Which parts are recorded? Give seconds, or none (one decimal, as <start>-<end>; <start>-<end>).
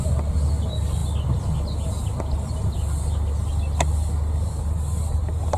0.0-5.6